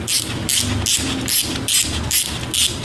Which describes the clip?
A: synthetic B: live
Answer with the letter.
B